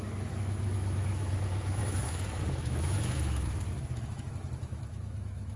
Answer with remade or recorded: remade